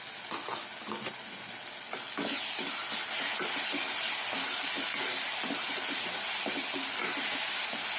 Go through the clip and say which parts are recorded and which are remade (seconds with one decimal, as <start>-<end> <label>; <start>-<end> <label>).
0.0-8.0 recorded